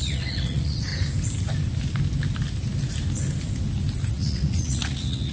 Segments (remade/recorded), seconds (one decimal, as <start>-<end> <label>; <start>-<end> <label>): 0.0-0.9 remade; 0.9-4.1 recorded; 4.1-5.3 remade